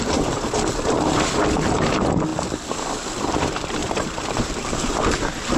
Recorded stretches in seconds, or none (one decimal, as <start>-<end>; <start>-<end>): 0.0-3.8; 5.0-5.6